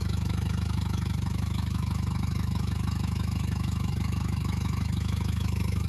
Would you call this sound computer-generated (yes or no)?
yes